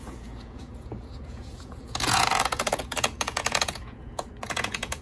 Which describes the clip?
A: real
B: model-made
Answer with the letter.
B